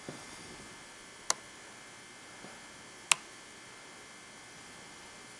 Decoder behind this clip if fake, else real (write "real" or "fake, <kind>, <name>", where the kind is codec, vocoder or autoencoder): real